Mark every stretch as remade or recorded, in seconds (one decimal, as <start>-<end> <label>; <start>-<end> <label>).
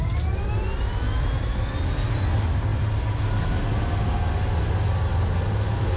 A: 0.0-6.0 recorded